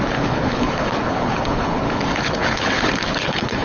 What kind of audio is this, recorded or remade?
remade